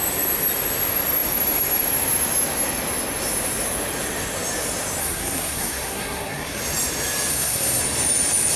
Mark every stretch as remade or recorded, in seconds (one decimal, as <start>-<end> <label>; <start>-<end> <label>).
0.0-5.0 recorded; 5.0-6.6 remade; 6.6-7.3 recorded; 7.3-7.8 remade; 7.8-8.6 recorded